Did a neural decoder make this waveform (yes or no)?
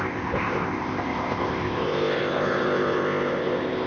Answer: yes